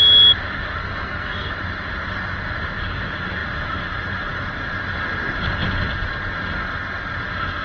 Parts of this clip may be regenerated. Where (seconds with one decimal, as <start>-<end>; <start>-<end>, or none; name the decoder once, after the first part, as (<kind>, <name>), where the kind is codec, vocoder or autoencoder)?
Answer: 0.8-1.5 (codec, SNAC)